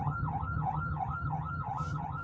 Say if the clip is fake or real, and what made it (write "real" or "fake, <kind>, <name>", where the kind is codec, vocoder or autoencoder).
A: fake, vocoder, HiFi-GAN